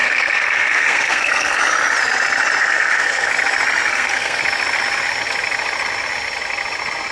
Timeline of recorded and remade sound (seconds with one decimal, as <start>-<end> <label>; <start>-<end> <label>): 0.0-1.6 remade; 1.6-2.6 recorded; 2.6-3.3 remade; 3.3-3.9 recorded; 3.9-4.4 remade; 4.4-7.1 recorded